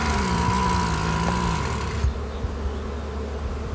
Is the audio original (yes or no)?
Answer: yes